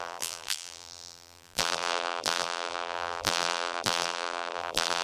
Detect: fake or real fake